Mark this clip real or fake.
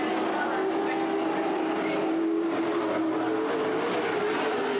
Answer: real